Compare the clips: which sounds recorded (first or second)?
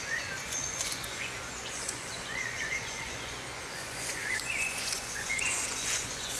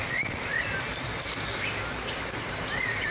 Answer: second